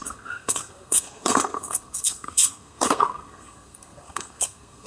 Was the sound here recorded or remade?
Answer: remade